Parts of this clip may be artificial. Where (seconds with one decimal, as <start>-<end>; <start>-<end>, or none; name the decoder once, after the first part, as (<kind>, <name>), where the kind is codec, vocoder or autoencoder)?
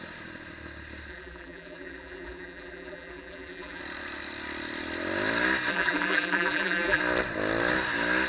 1.1-3.8 (vocoder, BigVGAN v2); 5.7-7.0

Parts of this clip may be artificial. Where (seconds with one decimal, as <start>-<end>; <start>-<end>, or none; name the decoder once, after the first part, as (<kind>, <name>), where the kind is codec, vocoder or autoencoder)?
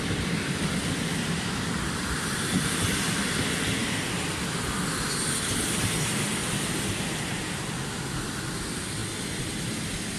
0.0-3.8 (vocoder, BigVGAN v2); 5.6-6.4; 7.0-9.0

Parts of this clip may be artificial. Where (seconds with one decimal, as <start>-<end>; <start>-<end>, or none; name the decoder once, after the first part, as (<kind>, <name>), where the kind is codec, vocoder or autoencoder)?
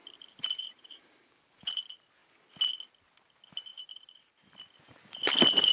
0.0-1.8 (vocoder, BigVGAN v2); 3.7-4.3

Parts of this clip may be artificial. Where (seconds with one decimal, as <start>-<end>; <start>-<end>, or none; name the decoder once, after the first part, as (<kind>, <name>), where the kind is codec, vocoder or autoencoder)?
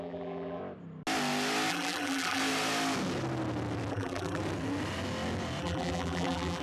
0.0-0.6 (vocoder, BigVGAN v2); 1.7-2.4; 3.9-4.4; 5.6-6.6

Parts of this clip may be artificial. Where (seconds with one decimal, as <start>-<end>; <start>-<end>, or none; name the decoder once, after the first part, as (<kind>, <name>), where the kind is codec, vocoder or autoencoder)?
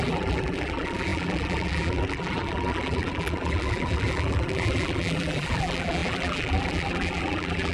0.0-7.7 (vocoder, BigVGAN v2)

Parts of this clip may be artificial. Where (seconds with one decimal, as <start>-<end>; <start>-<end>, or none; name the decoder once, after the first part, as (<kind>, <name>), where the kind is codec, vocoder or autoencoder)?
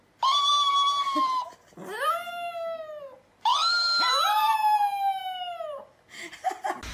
3.5-4.1 (vocoder, BigVGAN v2)